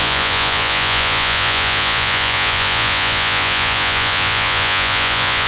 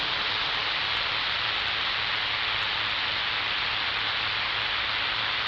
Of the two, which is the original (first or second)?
second